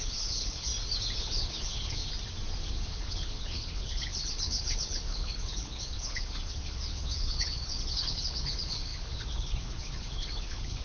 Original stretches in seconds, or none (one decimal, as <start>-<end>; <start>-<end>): 0.7-1.2; 2.0-2.6